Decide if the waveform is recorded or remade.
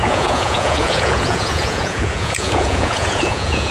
remade